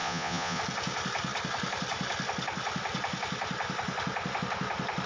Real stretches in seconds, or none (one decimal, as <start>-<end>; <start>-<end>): 0.6-5.1